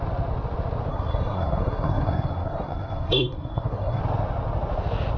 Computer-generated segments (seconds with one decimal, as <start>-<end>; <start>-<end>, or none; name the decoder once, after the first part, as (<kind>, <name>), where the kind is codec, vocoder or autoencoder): 0.9-4.0 (codec, SNAC)